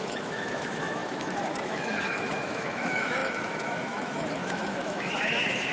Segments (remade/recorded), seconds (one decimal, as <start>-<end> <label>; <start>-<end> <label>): 0.0-5.7 remade